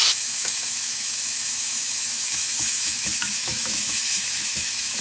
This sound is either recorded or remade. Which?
remade